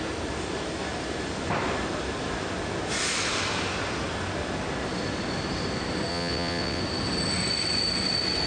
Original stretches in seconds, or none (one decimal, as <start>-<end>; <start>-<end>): 0.0-6.1; 6.8-8.5